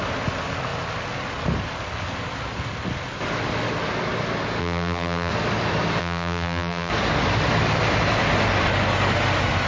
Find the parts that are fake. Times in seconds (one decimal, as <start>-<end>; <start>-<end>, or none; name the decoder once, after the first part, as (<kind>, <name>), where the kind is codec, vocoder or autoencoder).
4.6-5.3 (vocoder, BigVGAN v2); 6.0-6.9